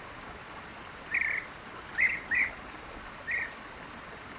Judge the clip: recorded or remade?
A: recorded